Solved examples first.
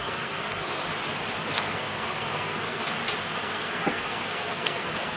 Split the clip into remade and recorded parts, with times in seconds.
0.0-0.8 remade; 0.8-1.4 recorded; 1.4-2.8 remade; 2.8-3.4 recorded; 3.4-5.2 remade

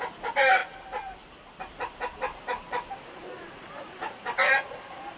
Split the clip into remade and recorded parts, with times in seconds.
0.0-5.2 recorded

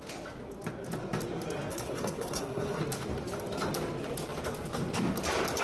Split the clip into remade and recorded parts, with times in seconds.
0.0-1.7 recorded; 1.7-2.8 remade; 2.8-5.6 recorded